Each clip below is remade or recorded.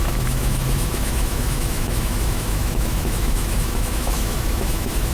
remade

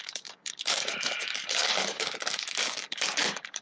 remade